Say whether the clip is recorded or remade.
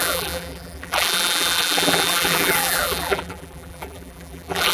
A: remade